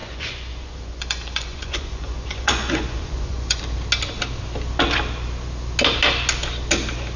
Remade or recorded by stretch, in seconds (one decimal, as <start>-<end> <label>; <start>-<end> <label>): 0.0-3.6 remade; 3.6-7.2 recorded